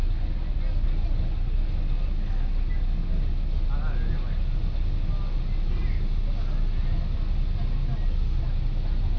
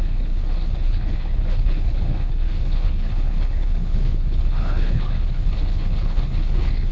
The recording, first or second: first